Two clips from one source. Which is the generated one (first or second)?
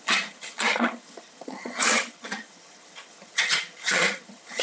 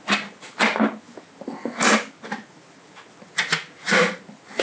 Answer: first